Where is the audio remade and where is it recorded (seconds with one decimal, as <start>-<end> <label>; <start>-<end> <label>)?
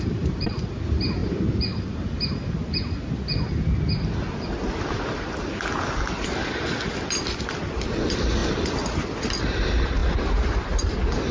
0.0-11.3 recorded